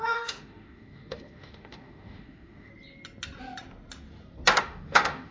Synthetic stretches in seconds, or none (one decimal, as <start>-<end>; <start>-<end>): 0.0-2.7; 4.6-5.3